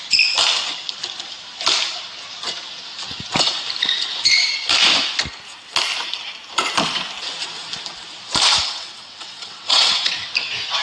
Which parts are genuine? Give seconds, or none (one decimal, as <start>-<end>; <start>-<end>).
0.0-8.6; 10.2-10.8